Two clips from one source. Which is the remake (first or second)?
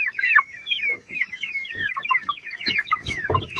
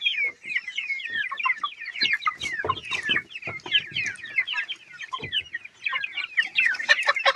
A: first